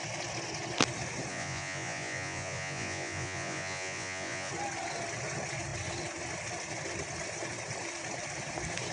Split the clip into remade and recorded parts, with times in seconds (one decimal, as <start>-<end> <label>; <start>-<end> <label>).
0.0-1.3 recorded; 1.3-4.5 remade; 4.5-8.9 recorded